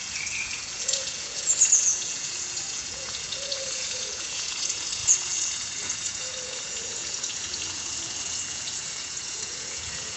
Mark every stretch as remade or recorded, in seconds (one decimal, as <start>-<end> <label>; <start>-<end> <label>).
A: 0.0-10.2 remade